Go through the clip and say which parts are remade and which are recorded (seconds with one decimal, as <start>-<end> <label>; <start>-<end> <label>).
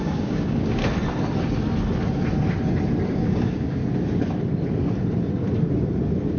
0.0-0.8 remade; 0.8-3.0 recorded; 3.0-3.8 remade; 3.8-6.4 recorded